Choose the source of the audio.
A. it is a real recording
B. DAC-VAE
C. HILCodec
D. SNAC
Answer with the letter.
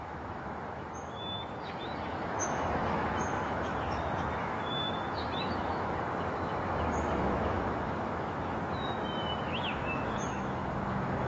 B